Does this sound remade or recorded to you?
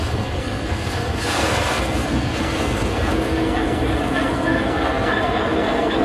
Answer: remade